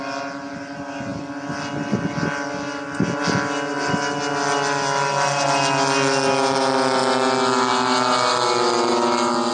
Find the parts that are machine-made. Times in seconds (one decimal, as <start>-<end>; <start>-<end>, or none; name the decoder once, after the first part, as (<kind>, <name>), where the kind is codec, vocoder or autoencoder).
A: none

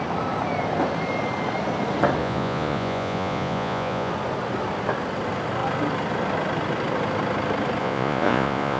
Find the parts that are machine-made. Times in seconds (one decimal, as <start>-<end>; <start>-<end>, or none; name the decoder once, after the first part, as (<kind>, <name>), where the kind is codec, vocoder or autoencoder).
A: 2.2-4.1 (vocoder, Vocos); 7.8-8.8